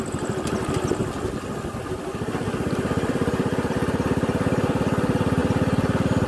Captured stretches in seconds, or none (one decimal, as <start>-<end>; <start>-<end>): 0.0-3.5; 4.1-6.3